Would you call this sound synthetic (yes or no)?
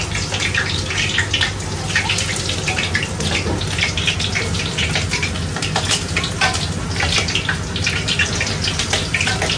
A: no